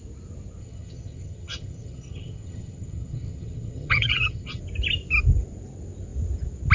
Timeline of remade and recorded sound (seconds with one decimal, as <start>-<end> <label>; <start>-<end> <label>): 0.0-0.6 recorded; 0.6-4.6 remade; 4.6-6.7 recorded